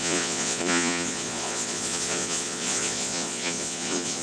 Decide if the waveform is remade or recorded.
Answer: remade